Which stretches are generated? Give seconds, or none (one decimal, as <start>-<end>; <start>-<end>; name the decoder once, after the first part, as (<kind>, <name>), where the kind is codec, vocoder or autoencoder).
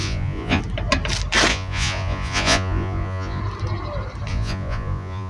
0.0-0.6 (vocoder, Vocos); 1.5-3.4; 4.3-5.3